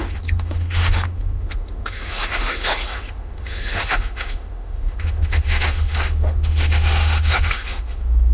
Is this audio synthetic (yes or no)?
yes